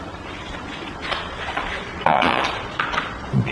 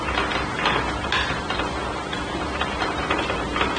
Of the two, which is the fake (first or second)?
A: first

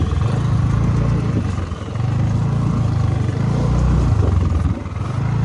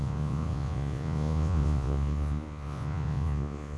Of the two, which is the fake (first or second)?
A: second